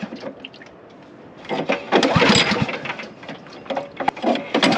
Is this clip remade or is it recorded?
recorded